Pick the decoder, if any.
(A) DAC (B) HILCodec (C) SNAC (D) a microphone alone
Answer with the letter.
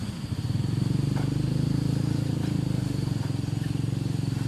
D